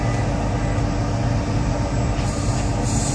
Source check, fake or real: real